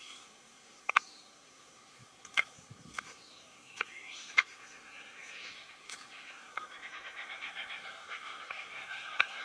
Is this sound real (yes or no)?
no